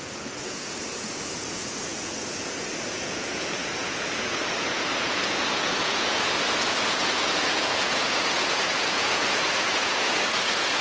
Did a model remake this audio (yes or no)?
yes